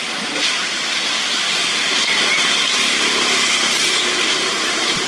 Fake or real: real